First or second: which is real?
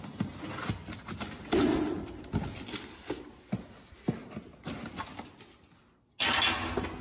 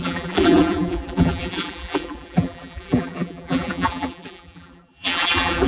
first